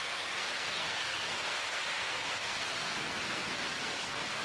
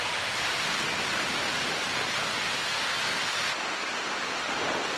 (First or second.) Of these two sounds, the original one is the second